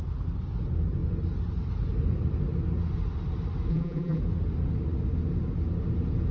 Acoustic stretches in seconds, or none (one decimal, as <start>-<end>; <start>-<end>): 0.0-3.7; 4.2-6.3